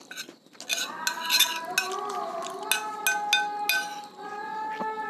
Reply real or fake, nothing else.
real